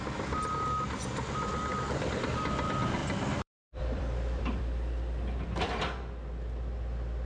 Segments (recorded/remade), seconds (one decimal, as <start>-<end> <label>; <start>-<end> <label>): 0.0-1.7 recorded; 1.7-2.3 remade; 2.3-3.0 recorded; 3.0-5.8 remade; 5.8-7.3 recorded